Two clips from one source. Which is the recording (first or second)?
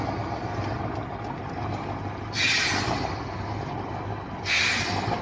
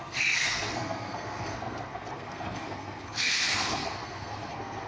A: first